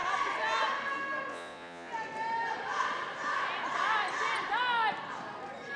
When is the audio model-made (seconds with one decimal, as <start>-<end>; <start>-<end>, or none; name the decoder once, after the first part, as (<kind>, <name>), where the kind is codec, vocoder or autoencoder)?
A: 1.3-1.9 (vocoder, Vocos)